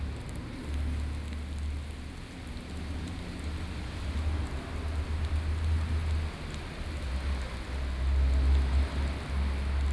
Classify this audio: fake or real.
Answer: real